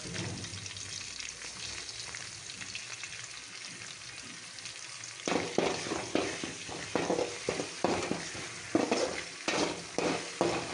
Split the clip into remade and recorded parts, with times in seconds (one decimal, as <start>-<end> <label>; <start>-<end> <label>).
0.0-10.7 recorded